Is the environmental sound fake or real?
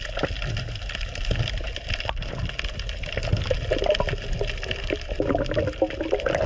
real